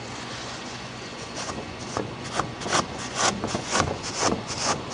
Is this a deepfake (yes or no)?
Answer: yes